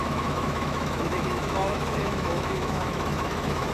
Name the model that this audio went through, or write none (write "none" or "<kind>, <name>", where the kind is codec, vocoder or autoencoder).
autoencoder, DAC-VAE